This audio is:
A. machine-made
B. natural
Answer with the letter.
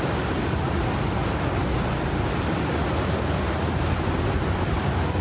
B